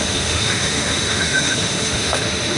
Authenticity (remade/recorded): remade